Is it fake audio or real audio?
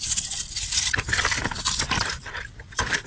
real